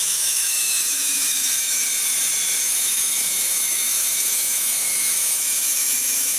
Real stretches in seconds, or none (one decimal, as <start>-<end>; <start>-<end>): 1.8-2.6